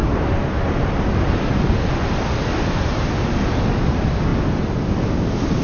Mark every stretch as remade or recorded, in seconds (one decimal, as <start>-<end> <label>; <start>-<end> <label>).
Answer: 0.0-0.8 remade; 0.8-5.6 recorded